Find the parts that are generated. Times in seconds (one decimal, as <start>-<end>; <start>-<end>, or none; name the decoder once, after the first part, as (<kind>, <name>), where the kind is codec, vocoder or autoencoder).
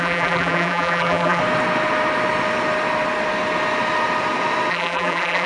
0.0-1.4 (vocoder, BigVGAN v2); 4.7-5.5